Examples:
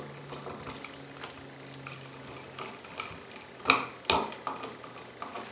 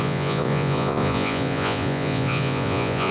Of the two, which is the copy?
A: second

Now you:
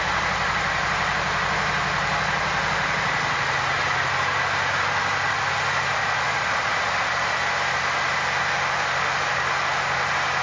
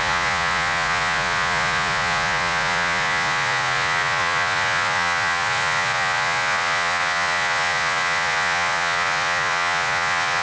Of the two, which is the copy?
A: second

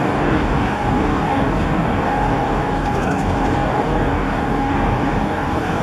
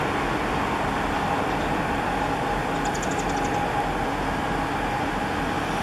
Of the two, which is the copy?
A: first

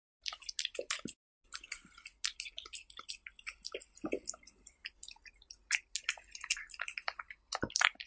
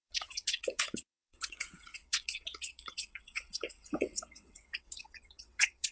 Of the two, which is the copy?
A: second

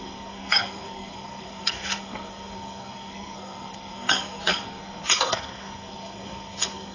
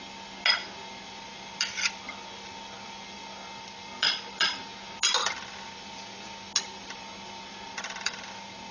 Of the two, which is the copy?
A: first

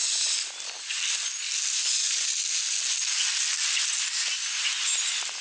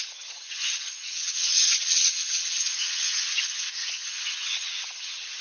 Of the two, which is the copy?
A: second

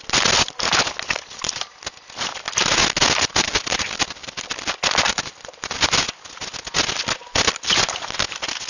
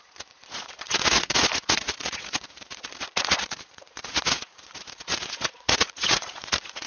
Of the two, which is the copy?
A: second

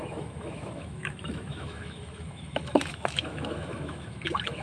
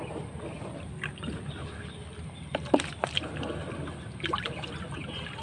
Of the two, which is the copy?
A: first